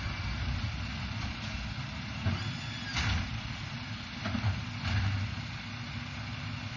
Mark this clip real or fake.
real